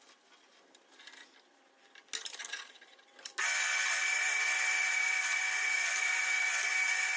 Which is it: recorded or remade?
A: recorded